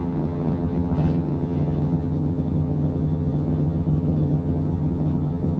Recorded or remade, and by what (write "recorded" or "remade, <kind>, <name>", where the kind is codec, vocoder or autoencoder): remade, vocoder, HiFi-GAN